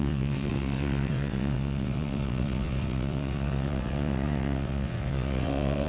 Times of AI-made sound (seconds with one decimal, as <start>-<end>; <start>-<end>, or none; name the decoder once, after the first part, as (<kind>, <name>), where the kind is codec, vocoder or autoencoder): 0.0-5.9 (vocoder, WaveNeXt)